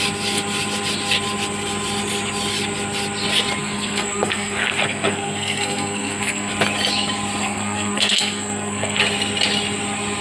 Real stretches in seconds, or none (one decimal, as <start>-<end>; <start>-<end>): 0.0-3.6; 6.5-7.4; 9.0-10.2

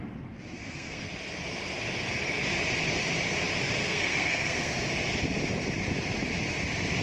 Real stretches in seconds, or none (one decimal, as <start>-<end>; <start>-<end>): 0.0-0.6; 1.1-3.8; 4.7-7.0

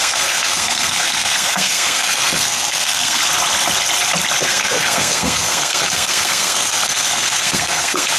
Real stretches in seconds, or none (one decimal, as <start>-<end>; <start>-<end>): 3.2-4.4

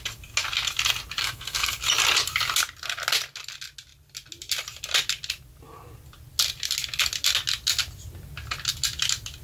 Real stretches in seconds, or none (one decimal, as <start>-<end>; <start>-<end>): 0.0-1.2; 1.8-9.4

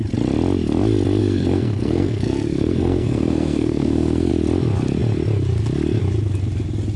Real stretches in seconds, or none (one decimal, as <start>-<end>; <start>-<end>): 0.0-1.2; 4.3-7.0